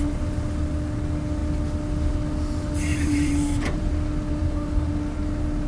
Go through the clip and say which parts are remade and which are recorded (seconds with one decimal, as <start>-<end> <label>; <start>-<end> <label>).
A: 0.0-2.9 recorded; 2.9-3.9 remade; 3.9-4.4 recorded; 4.4-4.9 remade; 4.9-5.7 recorded